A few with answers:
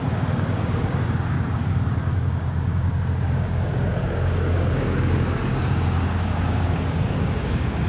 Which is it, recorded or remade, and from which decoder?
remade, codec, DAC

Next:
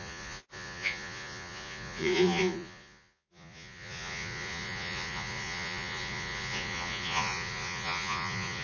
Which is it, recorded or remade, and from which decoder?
remade, vocoder, Vocos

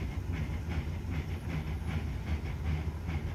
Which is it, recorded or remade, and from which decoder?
recorded